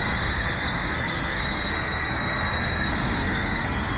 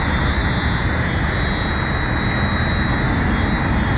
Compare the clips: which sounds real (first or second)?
second